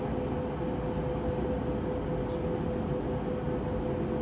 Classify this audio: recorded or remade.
recorded